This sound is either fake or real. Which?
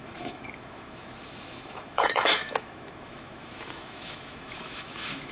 fake